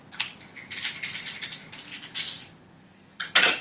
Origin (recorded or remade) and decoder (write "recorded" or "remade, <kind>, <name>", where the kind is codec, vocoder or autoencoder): recorded